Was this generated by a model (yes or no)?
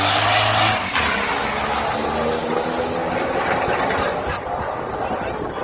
no